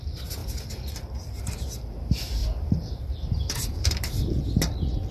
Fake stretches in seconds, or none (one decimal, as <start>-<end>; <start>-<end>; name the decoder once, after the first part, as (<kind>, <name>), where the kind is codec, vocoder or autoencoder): 0.4-1.4 (vocoder, BigVGAN v2); 2.4-4.4